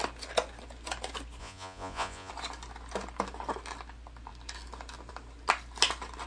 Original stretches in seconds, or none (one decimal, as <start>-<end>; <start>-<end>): 0.0-1.4; 2.3-6.3